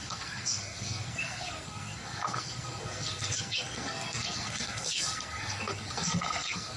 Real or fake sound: fake